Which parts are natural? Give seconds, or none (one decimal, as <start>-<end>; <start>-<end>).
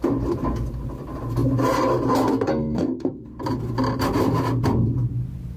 0.0-2.5; 3.3-5.6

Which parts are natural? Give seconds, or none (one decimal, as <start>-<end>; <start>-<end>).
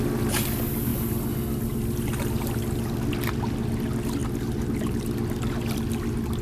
0.0-6.4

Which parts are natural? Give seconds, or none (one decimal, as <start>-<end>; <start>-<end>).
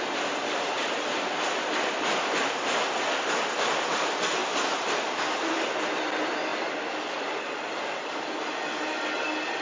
0.0-9.6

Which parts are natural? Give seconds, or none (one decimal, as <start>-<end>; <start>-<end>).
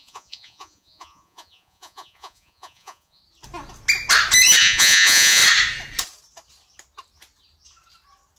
3.2-4.6; 5.4-8.4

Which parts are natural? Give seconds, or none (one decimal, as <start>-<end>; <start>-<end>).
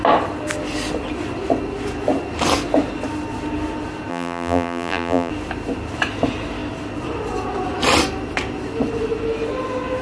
0.0-4.1; 5.3-10.0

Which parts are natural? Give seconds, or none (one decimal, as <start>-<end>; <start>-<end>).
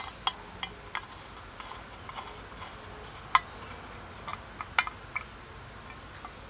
0.0-6.5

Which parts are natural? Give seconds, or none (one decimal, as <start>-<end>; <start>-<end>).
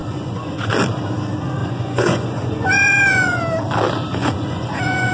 0.7-1.6; 3.4-4.1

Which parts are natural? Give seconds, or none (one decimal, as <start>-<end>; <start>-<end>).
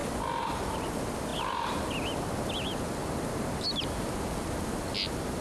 0.0-5.4